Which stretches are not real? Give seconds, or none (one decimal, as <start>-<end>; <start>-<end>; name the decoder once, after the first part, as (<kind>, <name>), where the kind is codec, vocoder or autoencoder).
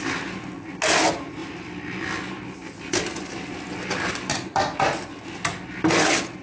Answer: none